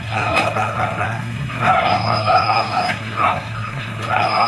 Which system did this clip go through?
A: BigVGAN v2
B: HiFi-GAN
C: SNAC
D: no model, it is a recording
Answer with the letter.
C